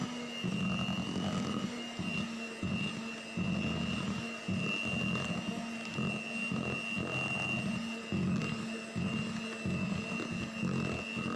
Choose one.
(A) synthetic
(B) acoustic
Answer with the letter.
B